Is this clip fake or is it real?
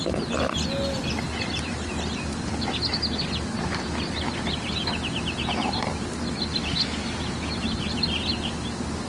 real